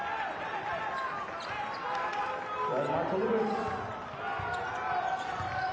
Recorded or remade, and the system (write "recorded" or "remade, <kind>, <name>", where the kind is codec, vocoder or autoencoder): recorded